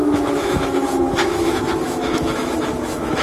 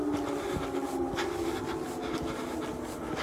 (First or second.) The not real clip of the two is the first